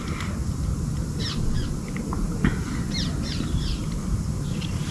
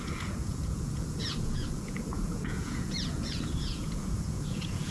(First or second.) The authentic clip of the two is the first